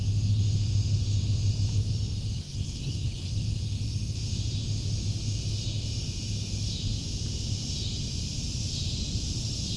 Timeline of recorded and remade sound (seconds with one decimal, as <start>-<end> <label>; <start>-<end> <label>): 0.0-2.4 recorded; 2.4-3.3 remade; 3.3-9.8 recorded